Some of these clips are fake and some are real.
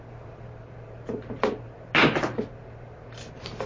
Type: real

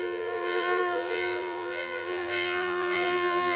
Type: fake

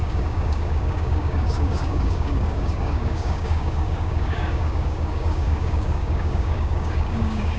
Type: fake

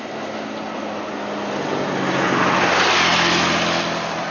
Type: real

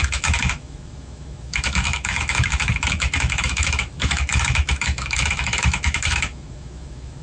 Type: fake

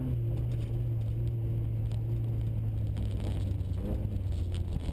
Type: real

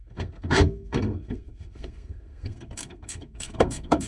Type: fake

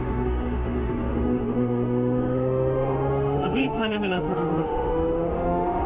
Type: fake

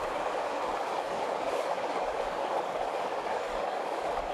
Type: fake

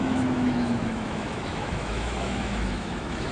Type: fake